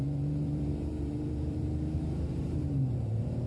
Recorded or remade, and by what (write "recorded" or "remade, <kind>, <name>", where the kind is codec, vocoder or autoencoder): remade, vocoder, BigVGAN v2